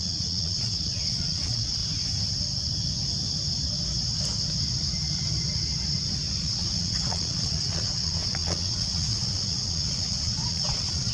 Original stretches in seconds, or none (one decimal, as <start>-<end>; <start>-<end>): 1.8-6.4